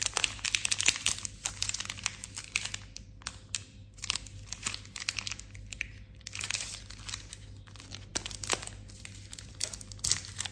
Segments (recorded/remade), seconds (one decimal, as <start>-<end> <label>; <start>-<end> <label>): 0.0-10.5 recorded